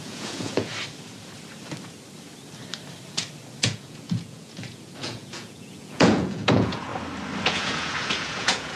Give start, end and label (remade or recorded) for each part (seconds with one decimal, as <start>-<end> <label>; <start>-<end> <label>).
0.0-0.7 remade; 0.7-3.6 recorded; 3.6-6.9 remade; 6.9-7.4 recorded; 7.4-8.8 remade